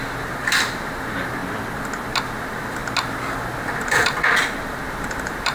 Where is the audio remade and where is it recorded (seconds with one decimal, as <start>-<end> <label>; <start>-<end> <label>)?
0.0-1.4 remade; 1.4-2.2 recorded; 2.2-2.8 remade; 2.8-3.6 recorded; 3.6-5.5 remade